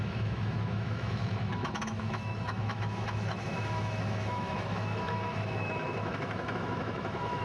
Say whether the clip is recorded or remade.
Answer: remade